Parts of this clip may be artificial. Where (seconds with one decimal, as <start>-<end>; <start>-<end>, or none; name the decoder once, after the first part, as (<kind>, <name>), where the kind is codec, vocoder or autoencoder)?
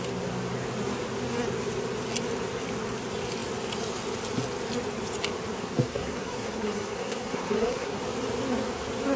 5.6-8.0 (codec, SNAC)